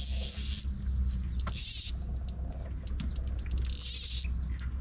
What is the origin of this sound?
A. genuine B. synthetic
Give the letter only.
A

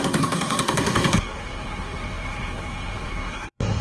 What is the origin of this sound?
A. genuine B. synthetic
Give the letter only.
B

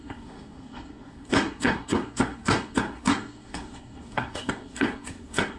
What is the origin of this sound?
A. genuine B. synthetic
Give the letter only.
B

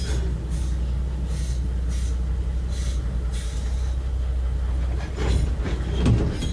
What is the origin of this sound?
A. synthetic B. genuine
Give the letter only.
B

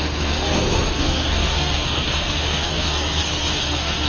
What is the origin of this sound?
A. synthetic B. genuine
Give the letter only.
A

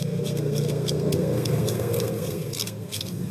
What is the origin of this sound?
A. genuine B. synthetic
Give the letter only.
B